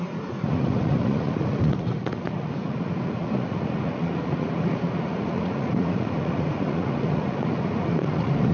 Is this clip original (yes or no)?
no